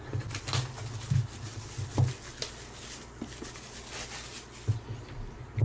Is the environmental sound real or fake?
real